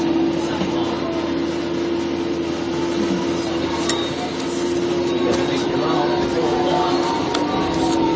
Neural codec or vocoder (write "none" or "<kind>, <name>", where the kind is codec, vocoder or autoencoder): none